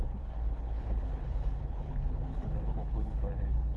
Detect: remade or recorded remade